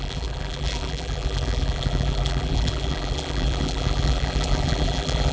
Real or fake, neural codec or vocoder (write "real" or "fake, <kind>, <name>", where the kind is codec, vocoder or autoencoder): fake, vocoder, BigVGAN v2